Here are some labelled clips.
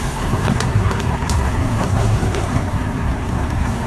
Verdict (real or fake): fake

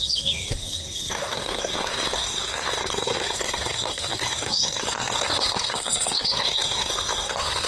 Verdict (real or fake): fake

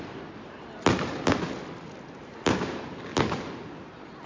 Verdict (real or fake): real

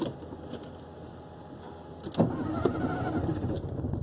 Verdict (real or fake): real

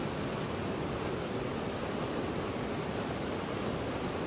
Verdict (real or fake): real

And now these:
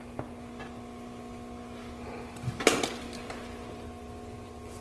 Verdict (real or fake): real